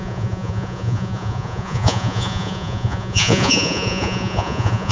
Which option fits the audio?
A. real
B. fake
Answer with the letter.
B